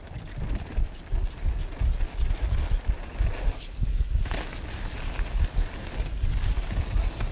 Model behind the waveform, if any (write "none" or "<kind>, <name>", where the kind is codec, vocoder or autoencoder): none